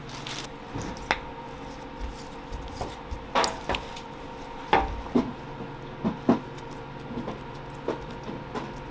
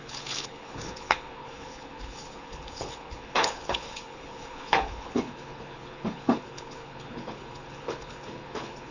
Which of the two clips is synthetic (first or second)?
second